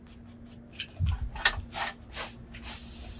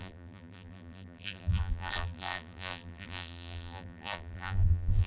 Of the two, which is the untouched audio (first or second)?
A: first